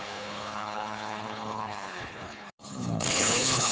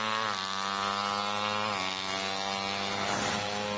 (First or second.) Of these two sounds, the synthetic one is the first